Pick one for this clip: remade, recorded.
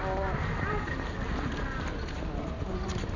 recorded